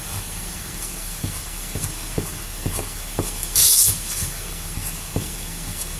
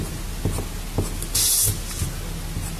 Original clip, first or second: second